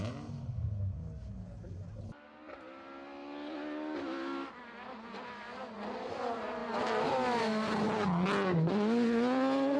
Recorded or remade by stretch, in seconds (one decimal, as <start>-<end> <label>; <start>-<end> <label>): 0.0-9.8 recorded